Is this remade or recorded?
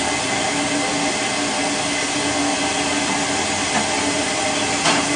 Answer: recorded